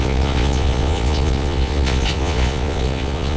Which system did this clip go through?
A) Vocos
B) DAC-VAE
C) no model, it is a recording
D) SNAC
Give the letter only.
A